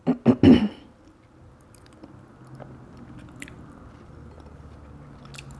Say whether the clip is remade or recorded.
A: recorded